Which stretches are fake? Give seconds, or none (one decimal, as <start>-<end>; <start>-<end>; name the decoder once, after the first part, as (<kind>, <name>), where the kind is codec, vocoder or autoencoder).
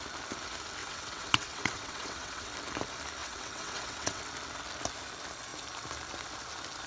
0.8-2.5 (vocoder, WaveNeXt); 3.2-4.2